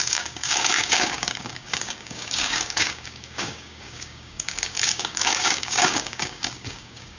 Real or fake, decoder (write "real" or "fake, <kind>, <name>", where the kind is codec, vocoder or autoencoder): fake, codec, DAC